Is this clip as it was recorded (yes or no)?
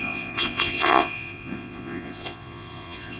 no